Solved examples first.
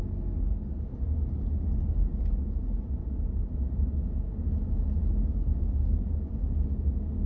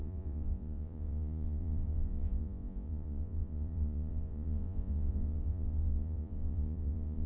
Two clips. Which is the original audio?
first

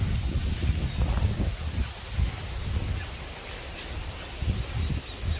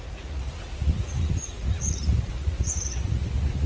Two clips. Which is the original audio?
first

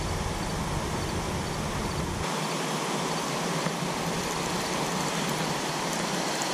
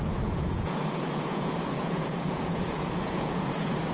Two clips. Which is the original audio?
first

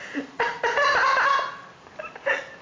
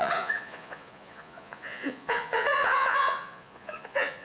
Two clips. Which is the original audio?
first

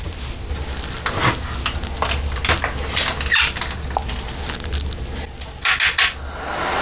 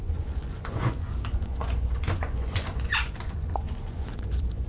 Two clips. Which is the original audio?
first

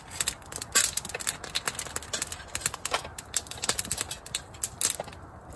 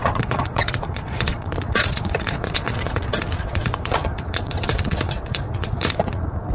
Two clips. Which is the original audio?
first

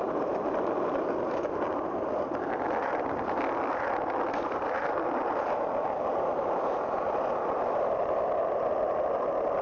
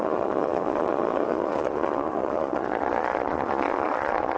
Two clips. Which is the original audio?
first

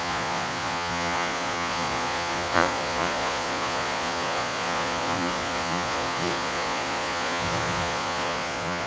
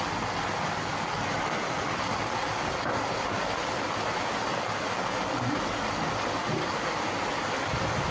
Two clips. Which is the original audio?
second